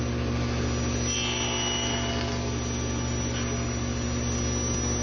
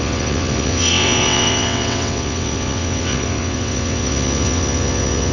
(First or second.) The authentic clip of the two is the first